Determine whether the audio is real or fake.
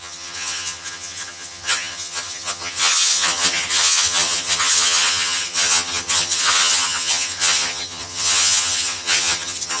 fake